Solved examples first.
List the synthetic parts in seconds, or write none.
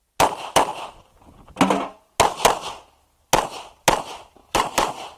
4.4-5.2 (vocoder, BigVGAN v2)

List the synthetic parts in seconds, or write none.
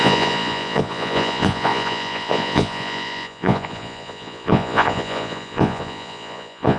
0.0-6.8 (vocoder, Vocos)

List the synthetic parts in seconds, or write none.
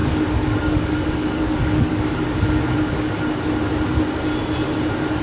0.0-3.1 (codec, DAC)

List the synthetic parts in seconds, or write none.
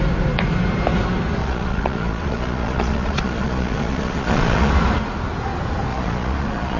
1.4-4.7 (vocoder, Vocos); 5.9-6.8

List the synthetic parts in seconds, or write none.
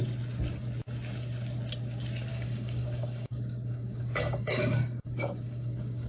2.3-6.1 (codec, DAC)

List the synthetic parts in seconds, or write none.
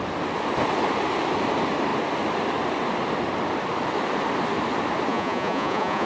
5.1-6.1 (vocoder, Vocos)